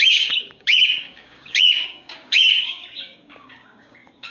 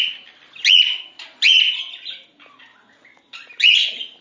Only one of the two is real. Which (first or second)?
second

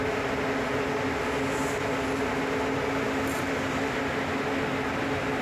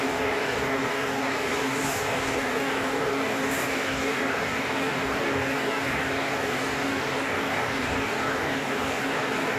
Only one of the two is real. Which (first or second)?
first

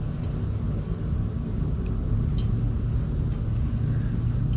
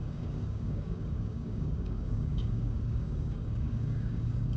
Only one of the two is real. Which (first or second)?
first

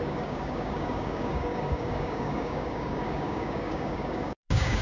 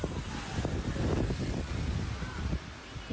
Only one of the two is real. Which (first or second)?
second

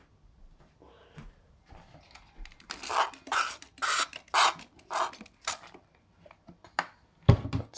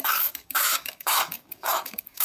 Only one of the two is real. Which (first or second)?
first